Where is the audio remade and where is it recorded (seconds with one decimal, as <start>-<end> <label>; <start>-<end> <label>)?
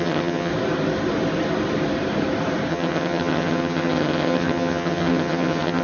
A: 0.0-0.5 remade; 0.5-2.7 recorded; 2.7-5.8 remade